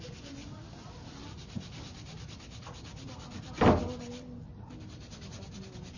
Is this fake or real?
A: real